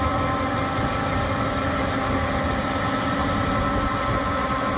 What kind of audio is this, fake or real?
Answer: real